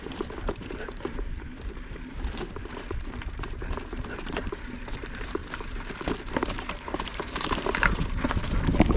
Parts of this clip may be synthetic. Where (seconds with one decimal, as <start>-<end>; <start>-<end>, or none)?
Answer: 0.0-5.4; 6.3-9.0